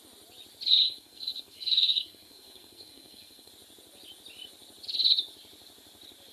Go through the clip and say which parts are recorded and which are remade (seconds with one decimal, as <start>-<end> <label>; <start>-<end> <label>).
0.0-0.8 recorded; 0.8-3.5 remade; 3.5-6.3 recorded